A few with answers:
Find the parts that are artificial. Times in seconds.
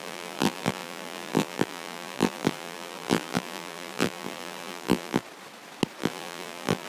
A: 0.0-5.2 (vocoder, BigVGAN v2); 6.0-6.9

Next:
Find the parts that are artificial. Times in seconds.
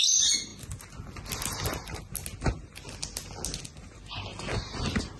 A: none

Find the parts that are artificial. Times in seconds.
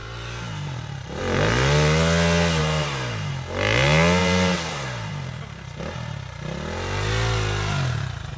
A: 0.0-1.2 (vocoder, BigVGAN v2); 2.6-3.3; 4.2-5.4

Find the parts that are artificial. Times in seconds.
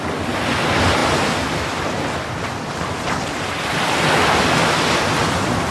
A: 1.0-4.4 (vocoder, BigVGAN v2)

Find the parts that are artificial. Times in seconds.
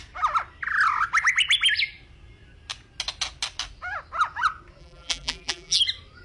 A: 4.8-5.8 (vocoder, BigVGAN v2)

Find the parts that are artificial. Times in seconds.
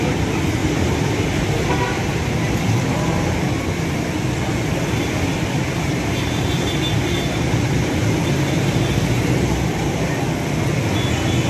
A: 0.6-3.4 (vocoder, BigVGAN v2); 5.3-10.1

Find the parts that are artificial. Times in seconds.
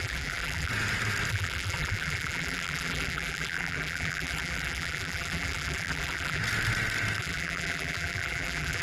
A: 0.0-0.7 (vocoder, BigVGAN v2); 1.3-6.4; 7.2-8.8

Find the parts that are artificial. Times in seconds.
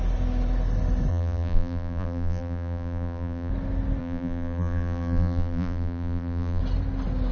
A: 1.1-3.5 (vocoder, BigVGAN v2); 4.0-6.6